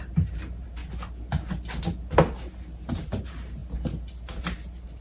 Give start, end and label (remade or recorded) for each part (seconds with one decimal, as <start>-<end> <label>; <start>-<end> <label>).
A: 0.0-0.8 remade; 0.8-2.9 recorded; 2.9-3.6 remade; 3.6-4.4 recorded; 4.4-5.0 remade